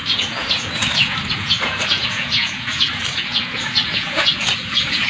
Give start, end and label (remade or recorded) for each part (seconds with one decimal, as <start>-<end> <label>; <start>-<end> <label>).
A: 0.0-5.1 remade